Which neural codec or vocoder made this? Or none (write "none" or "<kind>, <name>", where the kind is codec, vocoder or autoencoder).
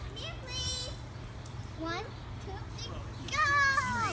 none